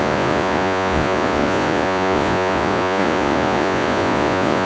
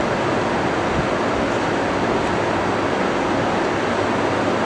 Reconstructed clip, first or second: first